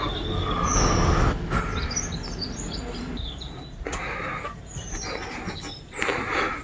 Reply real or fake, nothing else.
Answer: real